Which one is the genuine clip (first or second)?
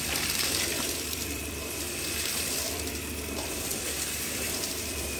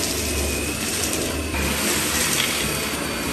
second